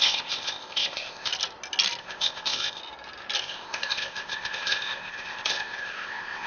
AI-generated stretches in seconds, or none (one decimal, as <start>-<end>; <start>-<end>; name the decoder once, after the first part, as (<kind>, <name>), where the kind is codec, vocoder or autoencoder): 0.0-1.3 (codec, ZipCodec); 2.0-2.8; 3.4-6.5

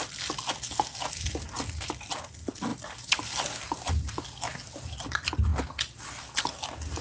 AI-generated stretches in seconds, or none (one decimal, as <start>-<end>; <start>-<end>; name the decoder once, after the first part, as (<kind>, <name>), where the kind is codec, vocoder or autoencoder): 2.7-3.9 (vocoder, BigVGAN v2)

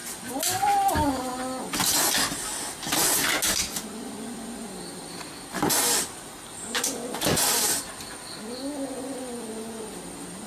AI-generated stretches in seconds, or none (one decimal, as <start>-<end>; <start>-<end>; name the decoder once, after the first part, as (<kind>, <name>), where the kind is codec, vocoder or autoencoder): none

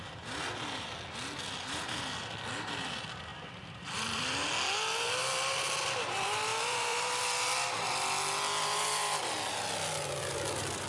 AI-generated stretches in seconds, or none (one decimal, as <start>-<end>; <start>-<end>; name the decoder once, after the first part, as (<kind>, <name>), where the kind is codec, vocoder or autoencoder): 3.3-4.5 (vocoder, BigVGAN v2); 6.5-7.2

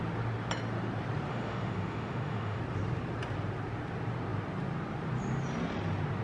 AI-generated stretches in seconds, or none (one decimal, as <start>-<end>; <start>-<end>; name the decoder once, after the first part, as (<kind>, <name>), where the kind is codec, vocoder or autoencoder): 1.3-2.6 (autoencoder, DAC-VAE)

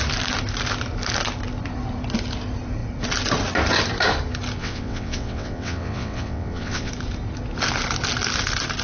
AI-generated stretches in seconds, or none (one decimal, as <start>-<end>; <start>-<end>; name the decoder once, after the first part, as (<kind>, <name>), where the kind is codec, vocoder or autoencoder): 4.6-6.9 (vocoder, WaveNeXt)

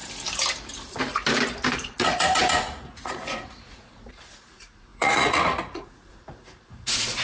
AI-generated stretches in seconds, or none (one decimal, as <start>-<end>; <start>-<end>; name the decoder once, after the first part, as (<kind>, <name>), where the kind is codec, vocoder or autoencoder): 1.7-7.2 (vocoder, Vocos)

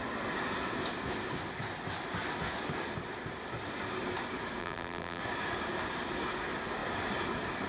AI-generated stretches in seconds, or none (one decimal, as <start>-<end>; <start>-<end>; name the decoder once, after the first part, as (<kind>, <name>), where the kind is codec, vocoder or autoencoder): 4.6-5.2 (vocoder, BigVGAN v2)